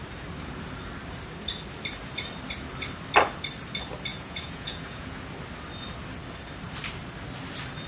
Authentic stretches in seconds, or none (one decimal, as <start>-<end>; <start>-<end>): 0.0-4.1; 5.2-7.9